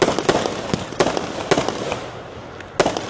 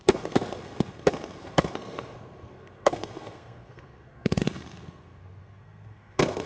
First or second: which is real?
first